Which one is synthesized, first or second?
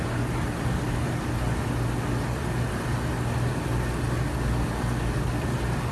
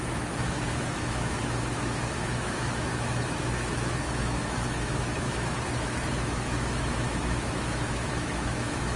second